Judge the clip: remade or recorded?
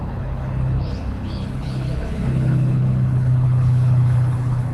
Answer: remade